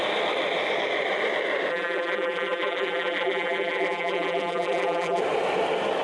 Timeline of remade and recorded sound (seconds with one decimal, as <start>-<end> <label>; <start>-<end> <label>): 0.0-1.7 recorded; 1.7-5.2 remade; 5.2-6.0 recorded